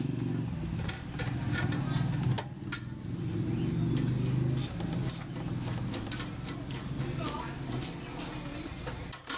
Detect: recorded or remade recorded